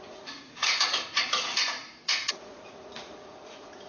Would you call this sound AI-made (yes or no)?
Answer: yes